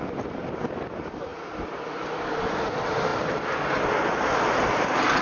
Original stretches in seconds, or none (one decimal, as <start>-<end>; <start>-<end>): 0.0-5.2